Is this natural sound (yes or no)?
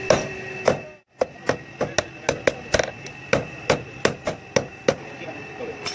yes